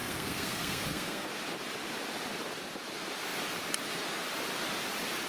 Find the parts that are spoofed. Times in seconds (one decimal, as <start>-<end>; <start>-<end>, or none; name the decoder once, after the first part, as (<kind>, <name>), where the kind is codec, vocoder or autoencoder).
0.0-1.3 (codec, SNAC)